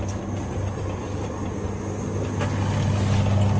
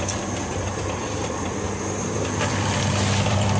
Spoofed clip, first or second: second